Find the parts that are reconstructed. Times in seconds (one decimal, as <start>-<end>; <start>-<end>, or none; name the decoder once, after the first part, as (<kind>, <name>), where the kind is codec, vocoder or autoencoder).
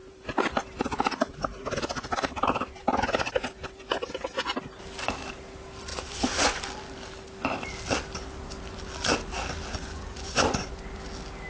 5.9-6.6 (vocoder, Vocos); 9.7-10.7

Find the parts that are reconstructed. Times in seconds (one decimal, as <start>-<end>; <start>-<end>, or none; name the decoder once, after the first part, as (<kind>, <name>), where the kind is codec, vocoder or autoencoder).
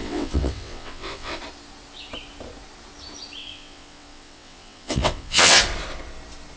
0.0-1.4 (vocoder, WaveNeXt); 3.4-5.6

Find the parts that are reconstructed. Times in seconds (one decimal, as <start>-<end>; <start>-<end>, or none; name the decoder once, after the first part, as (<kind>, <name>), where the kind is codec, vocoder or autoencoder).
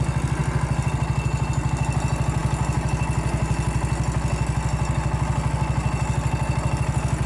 none